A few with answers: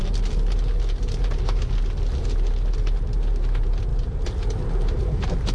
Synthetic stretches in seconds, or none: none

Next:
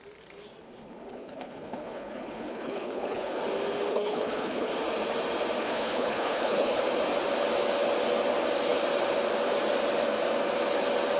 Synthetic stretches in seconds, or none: 0.6-3.4 (codec, HILCodec); 3.9-4.7; 5.6-6.8

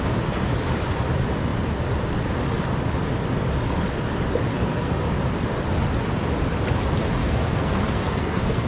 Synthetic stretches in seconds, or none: 4.5-5.0 (codec, SNAC); 7.2-8.7